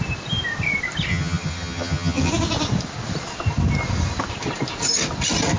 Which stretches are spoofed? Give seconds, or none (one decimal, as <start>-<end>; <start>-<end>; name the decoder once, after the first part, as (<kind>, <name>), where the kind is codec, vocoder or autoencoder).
1.1-2.3 (vocoder, HiFi-GAN)